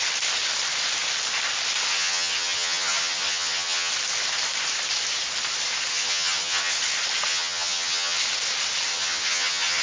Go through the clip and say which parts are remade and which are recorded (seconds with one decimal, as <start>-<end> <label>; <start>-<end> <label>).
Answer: 0.0-1.9 recorded; 1.9-3.9 remade; 3.9-5.9 recorded; 5.9-6.7 remade; 6.7-7.3 recorded; 7.3-8.2 remade; 8.2-8.9 recorded; 8.9-9.8 remade